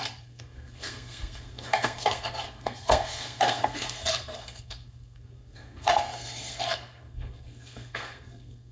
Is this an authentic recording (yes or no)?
no